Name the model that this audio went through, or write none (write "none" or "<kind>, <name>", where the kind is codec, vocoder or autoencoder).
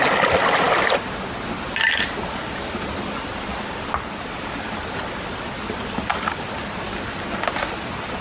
none